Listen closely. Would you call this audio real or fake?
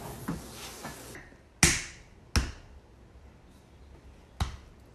real